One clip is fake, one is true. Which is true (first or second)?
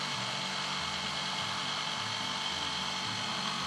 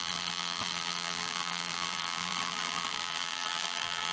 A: first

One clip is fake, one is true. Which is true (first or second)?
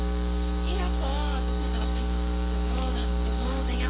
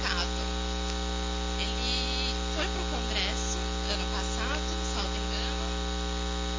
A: second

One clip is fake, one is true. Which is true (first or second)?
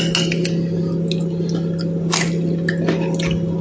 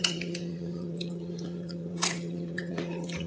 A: first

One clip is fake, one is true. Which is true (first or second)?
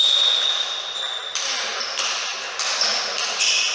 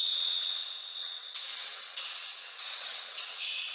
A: first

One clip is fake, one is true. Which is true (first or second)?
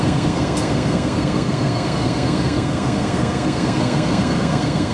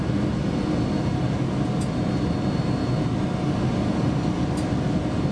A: second